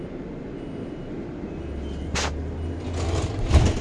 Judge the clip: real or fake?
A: real